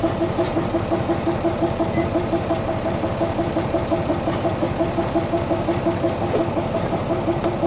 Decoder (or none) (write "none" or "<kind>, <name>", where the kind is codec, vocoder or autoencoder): vocoder, BigVGAN v2